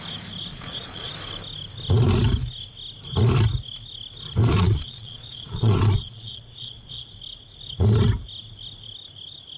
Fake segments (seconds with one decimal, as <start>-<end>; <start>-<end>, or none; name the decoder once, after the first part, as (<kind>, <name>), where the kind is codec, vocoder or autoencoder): 0.5-1.1 (vocoder, Vocos); 4.5-7.1